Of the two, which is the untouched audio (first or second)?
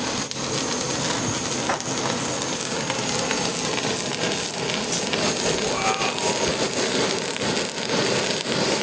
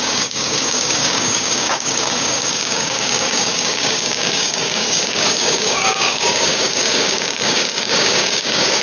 first